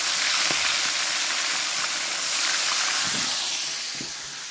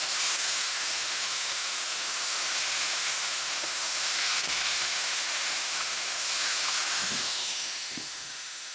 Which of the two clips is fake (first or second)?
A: second